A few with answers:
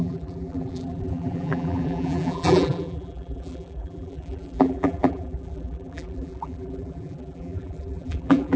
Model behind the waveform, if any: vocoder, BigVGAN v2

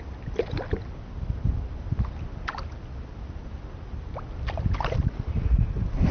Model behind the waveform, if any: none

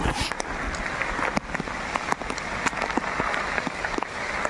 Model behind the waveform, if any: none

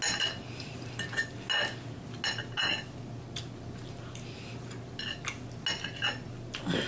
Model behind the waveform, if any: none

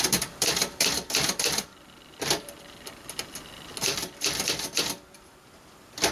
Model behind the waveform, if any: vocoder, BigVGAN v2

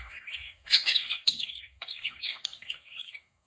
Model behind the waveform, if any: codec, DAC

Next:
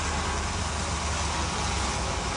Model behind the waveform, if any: none